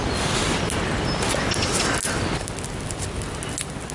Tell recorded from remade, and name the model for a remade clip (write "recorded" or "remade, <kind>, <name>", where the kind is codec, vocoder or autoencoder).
recorded